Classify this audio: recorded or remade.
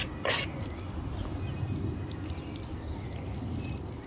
recorded